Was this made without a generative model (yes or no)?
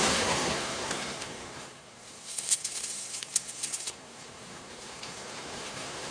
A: no